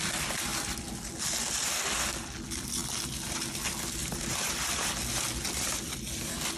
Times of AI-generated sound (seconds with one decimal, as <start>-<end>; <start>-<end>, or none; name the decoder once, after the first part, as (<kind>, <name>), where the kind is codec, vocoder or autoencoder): 4.0-4.9 (vocoder, BigVGAN v2)